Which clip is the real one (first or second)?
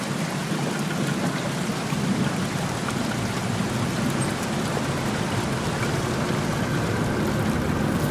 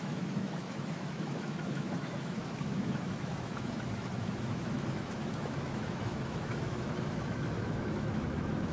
first